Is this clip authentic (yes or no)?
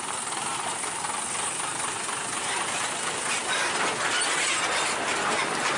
yes